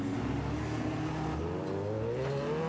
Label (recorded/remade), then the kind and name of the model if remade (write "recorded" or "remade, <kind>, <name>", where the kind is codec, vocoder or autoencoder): recorded